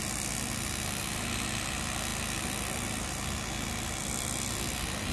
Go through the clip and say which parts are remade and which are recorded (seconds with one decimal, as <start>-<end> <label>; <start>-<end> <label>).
0.0-5.1 recorded